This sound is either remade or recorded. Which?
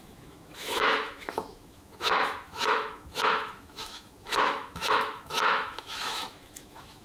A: remade